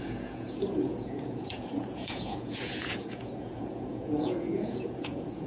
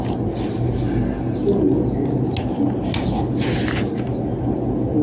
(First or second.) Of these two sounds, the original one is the second